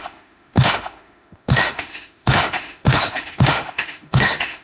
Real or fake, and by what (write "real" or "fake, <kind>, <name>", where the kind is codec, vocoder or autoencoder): fake, autoencoder, DAC-VAE